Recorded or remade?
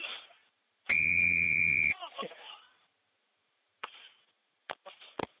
remade